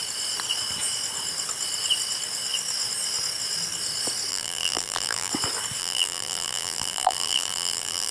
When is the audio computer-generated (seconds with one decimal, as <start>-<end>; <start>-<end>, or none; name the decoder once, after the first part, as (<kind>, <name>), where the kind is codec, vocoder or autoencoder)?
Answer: 4.3-5.3 (vocoder, BigVGAN v2); 5.8-8.1